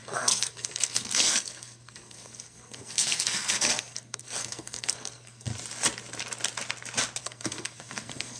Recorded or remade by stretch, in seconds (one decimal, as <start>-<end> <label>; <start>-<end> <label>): 0.0-5.5 remade; 5.5-7.2 recorded; 7.2-8.4 remade